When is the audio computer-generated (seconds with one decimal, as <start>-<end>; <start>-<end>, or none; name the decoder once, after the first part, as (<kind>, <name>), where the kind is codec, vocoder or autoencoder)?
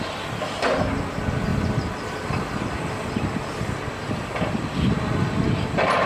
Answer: none